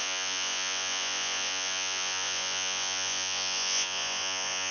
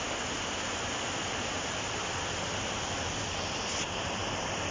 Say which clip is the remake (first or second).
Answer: first